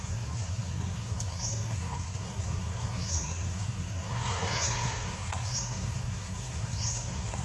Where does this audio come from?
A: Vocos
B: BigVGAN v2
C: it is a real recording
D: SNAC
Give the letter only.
D